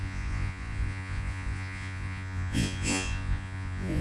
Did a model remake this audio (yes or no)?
yes